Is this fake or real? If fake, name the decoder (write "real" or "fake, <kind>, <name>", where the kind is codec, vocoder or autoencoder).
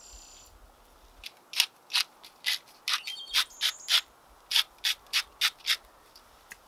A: real